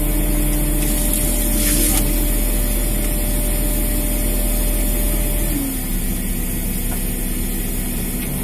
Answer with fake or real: real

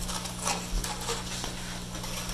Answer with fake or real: real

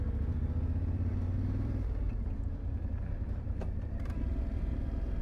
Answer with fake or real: fake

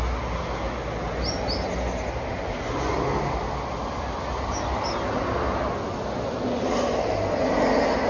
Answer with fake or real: real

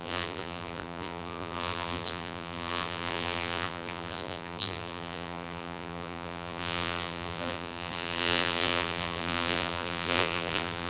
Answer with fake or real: fake